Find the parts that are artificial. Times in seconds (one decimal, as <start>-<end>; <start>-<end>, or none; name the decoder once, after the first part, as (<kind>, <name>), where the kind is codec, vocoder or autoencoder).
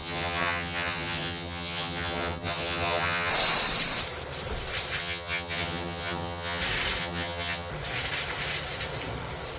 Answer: 0.0-3.3 (vocoder, HiFi-GAN); 5.0-6.6; 7.0-7.7